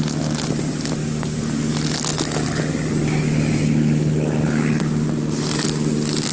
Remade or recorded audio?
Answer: recorded